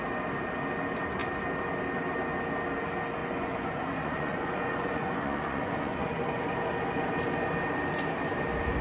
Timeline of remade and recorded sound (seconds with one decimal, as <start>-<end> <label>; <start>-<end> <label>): 0.0-3.2 recorded; 3.2-6.2 remade; 6.2-8.8 recorded